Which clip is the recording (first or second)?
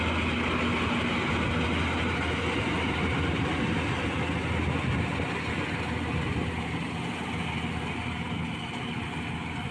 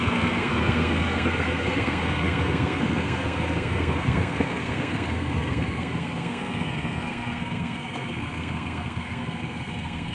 first